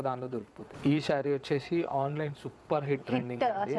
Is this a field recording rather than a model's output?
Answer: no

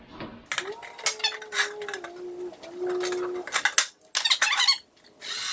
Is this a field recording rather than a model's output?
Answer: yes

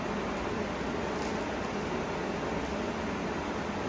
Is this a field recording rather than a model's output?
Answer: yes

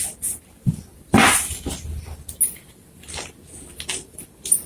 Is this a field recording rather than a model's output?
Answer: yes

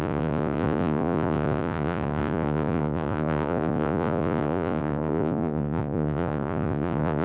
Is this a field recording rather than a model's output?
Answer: no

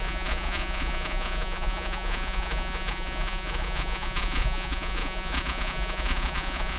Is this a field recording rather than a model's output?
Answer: no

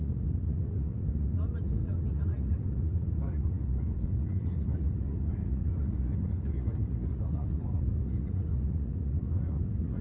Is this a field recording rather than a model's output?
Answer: no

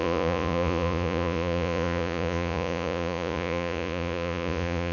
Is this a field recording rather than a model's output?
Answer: no